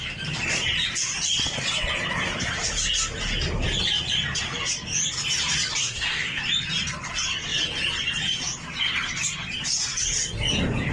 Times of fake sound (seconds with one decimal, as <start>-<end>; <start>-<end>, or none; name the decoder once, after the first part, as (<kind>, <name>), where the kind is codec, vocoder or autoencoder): 5.8-6.4 (codec, SNAC)